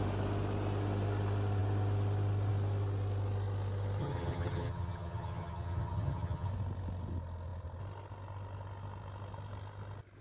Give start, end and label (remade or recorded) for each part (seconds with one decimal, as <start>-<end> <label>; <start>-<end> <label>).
0.0-4.0 recorded; 4.0-6.5 remade; 6.5-10.2 recorded